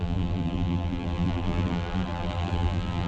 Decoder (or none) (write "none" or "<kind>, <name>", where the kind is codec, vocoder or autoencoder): vocoder, BigVGAN v2